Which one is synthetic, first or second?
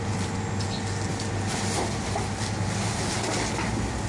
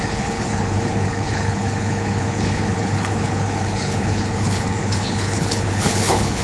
second